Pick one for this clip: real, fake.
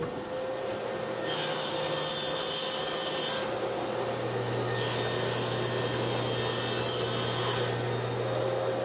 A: real